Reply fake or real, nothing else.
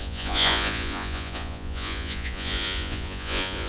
fake